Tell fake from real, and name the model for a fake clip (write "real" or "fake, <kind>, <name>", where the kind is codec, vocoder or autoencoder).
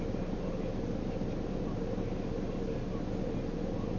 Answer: real